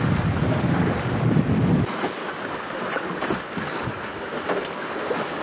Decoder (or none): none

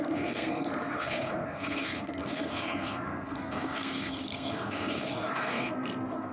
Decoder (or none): codec, SNAC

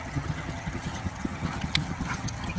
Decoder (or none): vocoder, HiFi-GAN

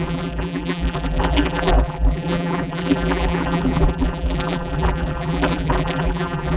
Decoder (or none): vocoder, BigVGAN v2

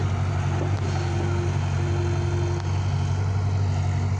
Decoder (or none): none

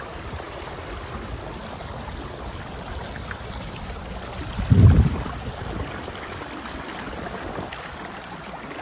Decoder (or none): none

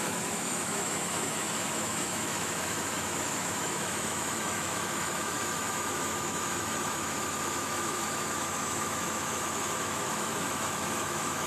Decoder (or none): autoencoder, DAC-VAE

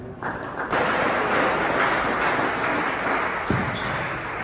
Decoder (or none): none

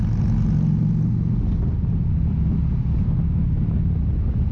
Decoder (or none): none